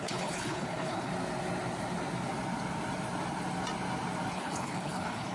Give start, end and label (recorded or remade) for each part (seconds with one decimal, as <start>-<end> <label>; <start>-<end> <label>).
0.0-1.1 remade; 1.1-4.3 recorded; 4.3-5.3 remade